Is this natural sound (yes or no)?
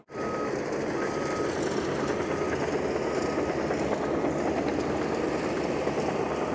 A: yes